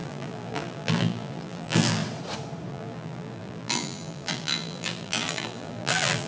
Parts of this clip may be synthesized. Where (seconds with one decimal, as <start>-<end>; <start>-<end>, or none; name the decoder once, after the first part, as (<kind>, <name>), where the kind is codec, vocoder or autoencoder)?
0.0-2.0 (vocoder, BigVGAN v2); 2.7-6.3